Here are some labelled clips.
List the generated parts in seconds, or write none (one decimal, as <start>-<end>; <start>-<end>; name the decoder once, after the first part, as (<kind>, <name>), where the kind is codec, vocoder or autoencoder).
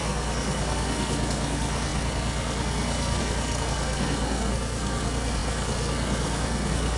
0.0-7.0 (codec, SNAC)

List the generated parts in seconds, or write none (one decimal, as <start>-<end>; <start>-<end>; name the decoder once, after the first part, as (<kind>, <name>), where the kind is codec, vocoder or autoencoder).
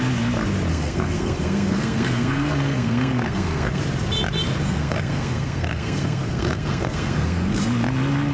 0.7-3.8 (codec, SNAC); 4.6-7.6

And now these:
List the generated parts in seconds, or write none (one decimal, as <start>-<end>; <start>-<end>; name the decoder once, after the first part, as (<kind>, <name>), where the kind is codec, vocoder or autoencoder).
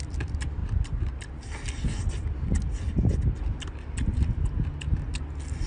none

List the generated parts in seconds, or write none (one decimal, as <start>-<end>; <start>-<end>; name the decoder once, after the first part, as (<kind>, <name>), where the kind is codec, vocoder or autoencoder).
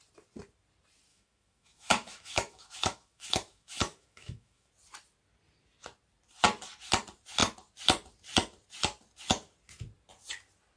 1.1-4.7 (autoencoder, DAC-VAE)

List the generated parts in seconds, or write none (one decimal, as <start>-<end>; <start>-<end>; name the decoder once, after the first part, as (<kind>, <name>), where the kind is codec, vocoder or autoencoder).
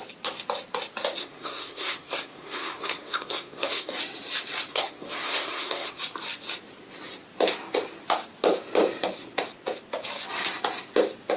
1.2-3.9 (codec, SNAC); 4.7-6.0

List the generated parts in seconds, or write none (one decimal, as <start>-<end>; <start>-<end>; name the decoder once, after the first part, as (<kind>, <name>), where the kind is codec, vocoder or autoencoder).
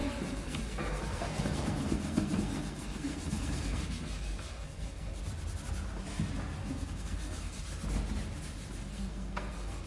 0.0-5.2 (codec, SNAC); 6.6-7.6; 8.9-9.9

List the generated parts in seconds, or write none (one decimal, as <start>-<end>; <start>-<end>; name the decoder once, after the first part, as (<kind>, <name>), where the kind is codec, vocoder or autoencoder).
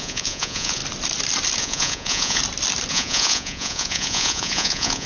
0.0-0.8 (vocoder, Vocos); 1.6-2.4; 2.9-5.1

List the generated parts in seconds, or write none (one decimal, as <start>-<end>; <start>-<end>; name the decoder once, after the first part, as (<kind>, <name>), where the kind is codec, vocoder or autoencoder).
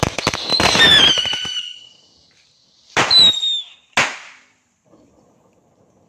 none